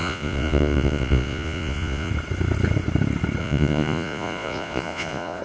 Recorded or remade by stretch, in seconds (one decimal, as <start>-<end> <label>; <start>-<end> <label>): 0.0-2.1 remade; 2.1-3.4 recorded; 3.4-5.4 remade